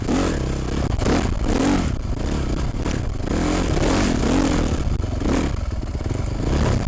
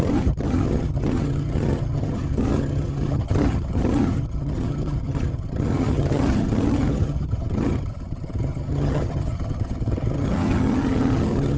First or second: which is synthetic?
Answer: second